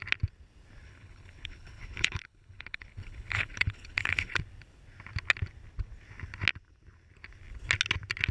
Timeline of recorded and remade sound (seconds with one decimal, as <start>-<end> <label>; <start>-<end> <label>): 0.0-0.8 recorded; 0.8-4.4 remade; 4.4-8.3 recorded